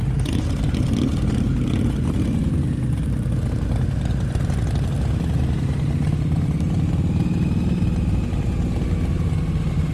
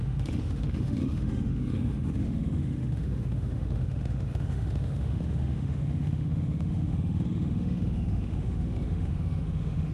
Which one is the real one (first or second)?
first